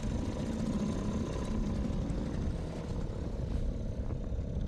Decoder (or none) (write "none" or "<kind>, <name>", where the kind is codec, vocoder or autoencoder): none